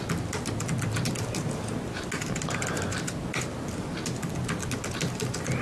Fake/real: real